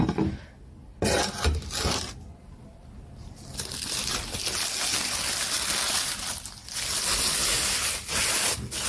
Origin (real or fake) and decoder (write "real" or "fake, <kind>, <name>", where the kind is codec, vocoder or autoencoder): real